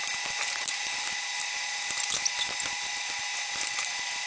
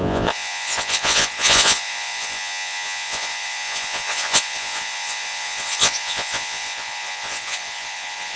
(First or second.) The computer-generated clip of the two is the second